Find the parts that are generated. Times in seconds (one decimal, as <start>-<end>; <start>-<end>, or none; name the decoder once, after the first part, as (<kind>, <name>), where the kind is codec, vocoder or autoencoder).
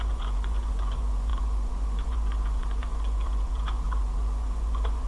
0.0-5.1 (vocoder, Vocos)